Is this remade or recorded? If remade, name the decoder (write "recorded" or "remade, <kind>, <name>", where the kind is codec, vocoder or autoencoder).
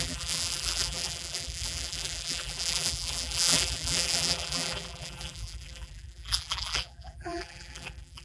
remade, vocoder, BigVGAN v2